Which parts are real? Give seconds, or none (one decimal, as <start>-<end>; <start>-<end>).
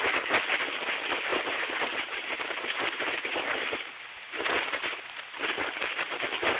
0.0-1.3; 5.3-6.6